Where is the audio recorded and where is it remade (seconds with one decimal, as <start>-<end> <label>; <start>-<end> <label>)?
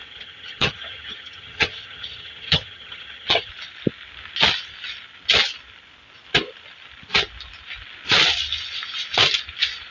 0.0-3.5 remade; 3.5-9.9 recorded